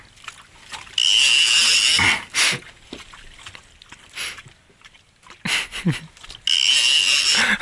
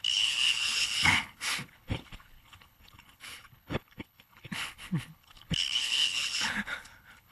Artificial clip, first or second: second